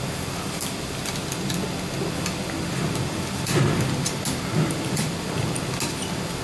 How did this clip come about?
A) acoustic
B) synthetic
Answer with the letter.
A